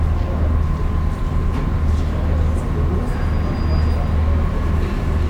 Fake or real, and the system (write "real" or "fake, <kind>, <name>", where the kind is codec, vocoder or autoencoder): real